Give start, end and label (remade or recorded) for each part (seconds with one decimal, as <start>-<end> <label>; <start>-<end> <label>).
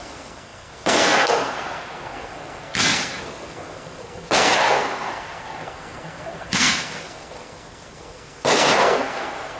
0.0-9.6 remade